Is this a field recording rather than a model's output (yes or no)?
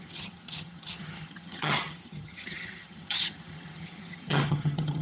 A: no